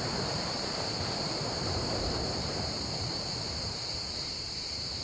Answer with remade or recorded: remade